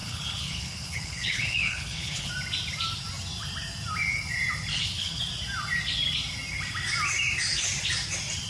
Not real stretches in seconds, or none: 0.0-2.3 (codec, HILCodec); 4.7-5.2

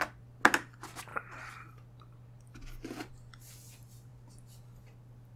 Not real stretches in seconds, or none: none

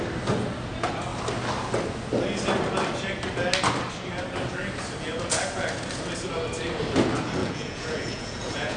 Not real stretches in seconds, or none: 7.4-8.8 (vocoder, Vocos)

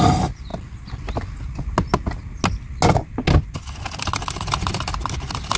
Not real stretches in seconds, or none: none

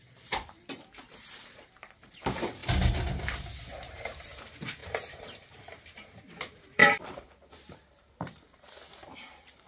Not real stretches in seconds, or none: 0.0-2.6 (vocoder, BigVGAN v2); 3.6-9.7

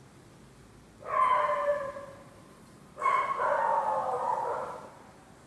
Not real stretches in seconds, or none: 1.7-3.4 (vocoder, BigVGAN v2); 4.0-5.5

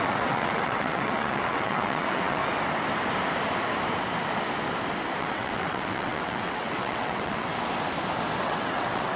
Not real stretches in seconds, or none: 0.0-2.4 (vocoder, WaveNeXt); 5.2-7.5; 8.4-9.2